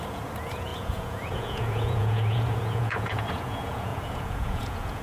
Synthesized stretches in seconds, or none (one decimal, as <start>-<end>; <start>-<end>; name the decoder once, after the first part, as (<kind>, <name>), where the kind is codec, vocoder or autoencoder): 0.0-5.0 (vocoder, Vocos)